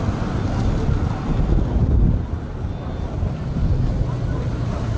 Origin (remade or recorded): recorded